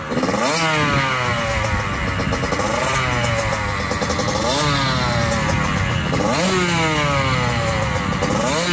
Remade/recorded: recorded